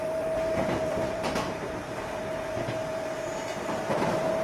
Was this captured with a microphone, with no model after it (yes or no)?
no